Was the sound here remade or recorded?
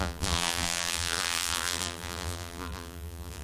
remade